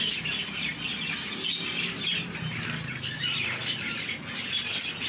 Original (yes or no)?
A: yes